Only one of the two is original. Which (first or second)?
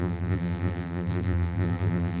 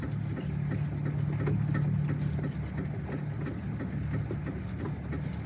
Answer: second